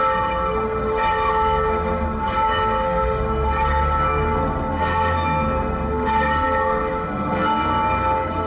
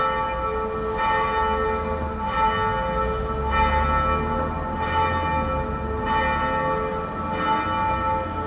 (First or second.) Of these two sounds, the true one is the second